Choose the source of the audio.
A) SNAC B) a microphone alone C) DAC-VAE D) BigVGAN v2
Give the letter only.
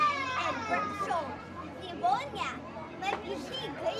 D